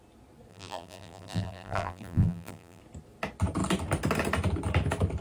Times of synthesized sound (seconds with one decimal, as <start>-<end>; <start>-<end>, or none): 0.5-2.8